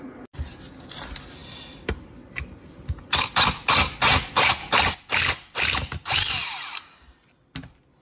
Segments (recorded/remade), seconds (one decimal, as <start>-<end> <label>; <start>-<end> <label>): 0.0-8.0 recorded